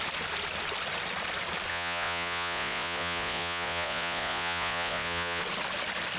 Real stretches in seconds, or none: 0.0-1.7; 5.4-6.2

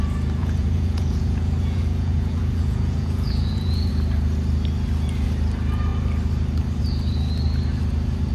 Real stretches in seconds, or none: 0.0-0.4; 3.9-8.3

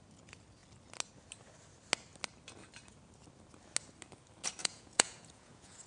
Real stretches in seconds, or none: 0.0-4.6

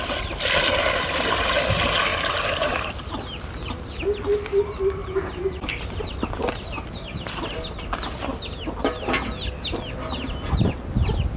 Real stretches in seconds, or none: 0.0-2.1; 3.9-5.0; 5.9-11.4

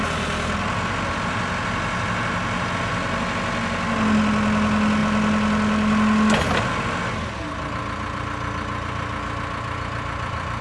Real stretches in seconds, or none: 0.0-10.6